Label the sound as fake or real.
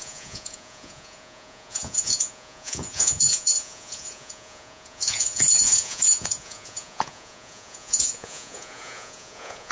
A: fake